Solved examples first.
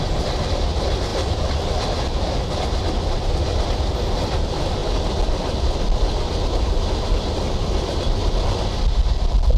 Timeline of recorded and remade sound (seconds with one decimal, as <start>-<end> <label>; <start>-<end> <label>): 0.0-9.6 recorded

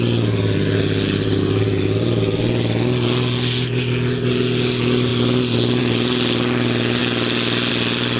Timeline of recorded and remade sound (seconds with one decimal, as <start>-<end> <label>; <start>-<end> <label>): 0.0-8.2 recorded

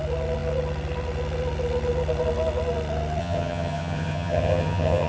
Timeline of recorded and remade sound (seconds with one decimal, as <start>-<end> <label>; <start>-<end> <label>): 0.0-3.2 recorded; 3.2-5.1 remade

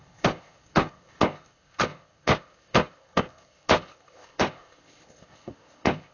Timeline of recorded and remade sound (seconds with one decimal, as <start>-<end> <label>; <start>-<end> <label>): 0.0-6.1 remade

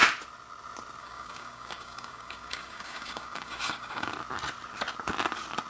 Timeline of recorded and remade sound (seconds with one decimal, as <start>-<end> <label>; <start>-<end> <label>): 0.0-1.0 recorded; 1.0-4.1 remade; 4.1-5.7 recorded